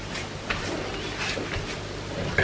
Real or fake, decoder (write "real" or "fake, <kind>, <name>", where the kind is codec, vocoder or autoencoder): real